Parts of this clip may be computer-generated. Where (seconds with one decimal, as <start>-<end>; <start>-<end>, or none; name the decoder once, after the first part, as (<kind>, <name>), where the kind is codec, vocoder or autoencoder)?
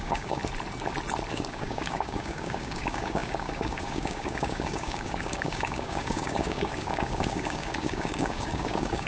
0.0-0.4 (codec, DAC); 1.3-9.1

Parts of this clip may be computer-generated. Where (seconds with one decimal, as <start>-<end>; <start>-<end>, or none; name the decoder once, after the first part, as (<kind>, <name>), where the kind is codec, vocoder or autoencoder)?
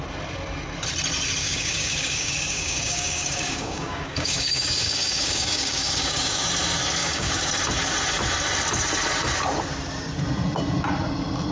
1.4-6.5 (codec, DAC); 7.0-7.5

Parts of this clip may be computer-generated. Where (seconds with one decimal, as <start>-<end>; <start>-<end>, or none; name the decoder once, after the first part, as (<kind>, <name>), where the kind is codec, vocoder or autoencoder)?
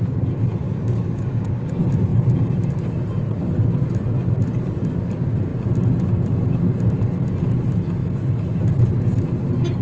0.6-1.7 (codec, DAC)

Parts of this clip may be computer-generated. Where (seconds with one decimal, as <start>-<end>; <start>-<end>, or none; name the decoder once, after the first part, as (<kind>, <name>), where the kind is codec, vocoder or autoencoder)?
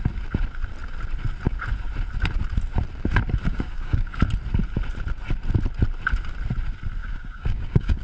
3.5-4.2 (codec, DAC); 7.0-8.0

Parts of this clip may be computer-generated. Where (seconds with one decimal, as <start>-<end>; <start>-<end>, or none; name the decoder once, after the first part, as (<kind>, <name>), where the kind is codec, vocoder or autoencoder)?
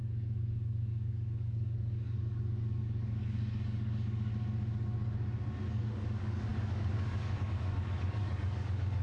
0.0-4.3 (codec, DAC); 5.7-9.0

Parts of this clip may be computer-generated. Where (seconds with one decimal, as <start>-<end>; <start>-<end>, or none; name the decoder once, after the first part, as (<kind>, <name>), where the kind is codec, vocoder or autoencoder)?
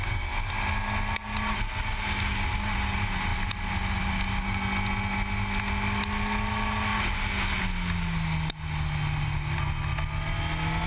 none